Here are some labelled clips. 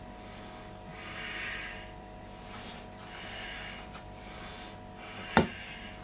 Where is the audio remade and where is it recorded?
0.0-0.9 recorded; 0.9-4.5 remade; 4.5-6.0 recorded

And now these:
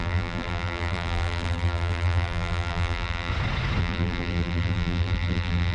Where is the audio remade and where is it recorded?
0.0-3.3 remade; 3.3-3.8 recorded; 3.8-5.7 remade

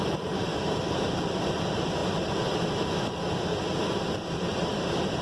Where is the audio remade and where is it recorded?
0.0-0.5 remade; 0.5-1.5 recorded; 1.5-2.0 remade; 2.0-4.4 recorded; 4.4-5.2 remade

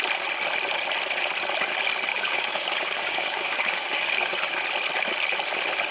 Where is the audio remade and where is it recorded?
0.0-2.1 recorded; 2.1-4.5 remade; 4.5-5.9 recorded